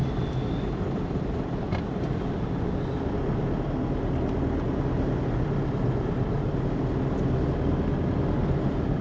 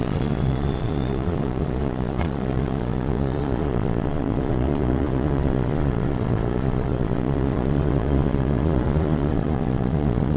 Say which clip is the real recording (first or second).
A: first